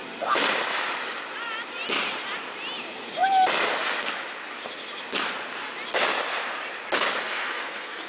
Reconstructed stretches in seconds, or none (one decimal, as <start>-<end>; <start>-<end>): 7.2-8.1